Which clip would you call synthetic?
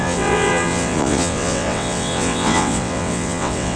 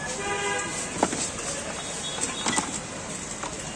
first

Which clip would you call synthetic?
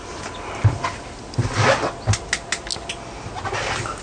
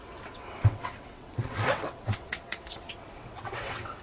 second